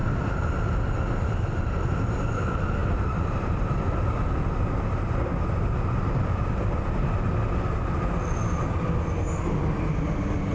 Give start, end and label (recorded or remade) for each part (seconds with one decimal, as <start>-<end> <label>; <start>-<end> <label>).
0.0-0.8 remade; 0.8-2.8 recorded; 2.8-6.8 remade; 6.8-10.5 recorded